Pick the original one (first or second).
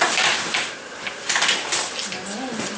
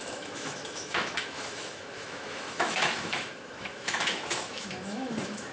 first